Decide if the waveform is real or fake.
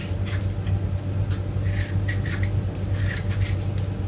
real